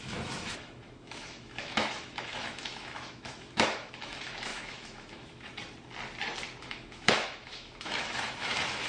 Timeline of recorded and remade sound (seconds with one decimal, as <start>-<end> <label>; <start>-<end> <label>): 0.0-5.5 remade; 5.5-6.6 recorded; 6.6-8.9 remade